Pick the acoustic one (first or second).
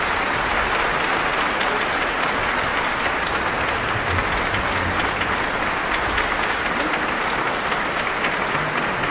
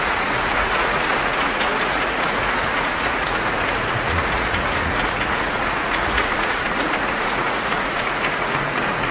first